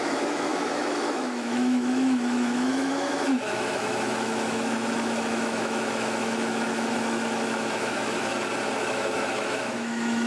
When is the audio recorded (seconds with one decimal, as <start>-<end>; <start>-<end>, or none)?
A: 8.3-8.8